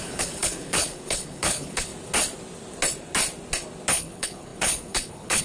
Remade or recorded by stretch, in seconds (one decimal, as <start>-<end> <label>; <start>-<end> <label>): 0.0-1.9 remade; 1.9-3.9 recorded; 3.9-5.4 remade